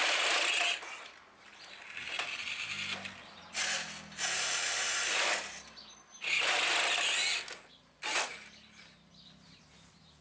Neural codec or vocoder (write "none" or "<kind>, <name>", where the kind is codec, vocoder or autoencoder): none